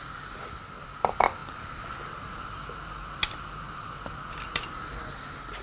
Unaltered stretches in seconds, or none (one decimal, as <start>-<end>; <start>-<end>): 0.0-5.6